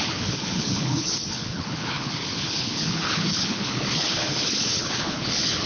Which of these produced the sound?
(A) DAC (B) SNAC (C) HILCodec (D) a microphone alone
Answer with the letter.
C